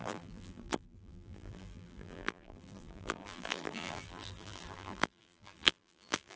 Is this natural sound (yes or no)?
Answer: no